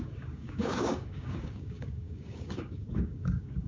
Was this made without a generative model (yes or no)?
no